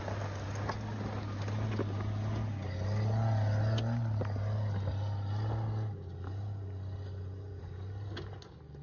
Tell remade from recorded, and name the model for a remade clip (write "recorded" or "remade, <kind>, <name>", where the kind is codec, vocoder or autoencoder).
recorded